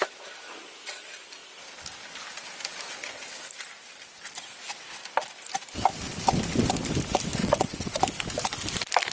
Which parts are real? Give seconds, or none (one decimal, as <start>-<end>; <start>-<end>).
0.0-7.4; 8.0-9.1